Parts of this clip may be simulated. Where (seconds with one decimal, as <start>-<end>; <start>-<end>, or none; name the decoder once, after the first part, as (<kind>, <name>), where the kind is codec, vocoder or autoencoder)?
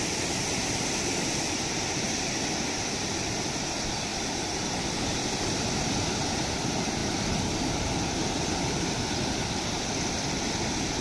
none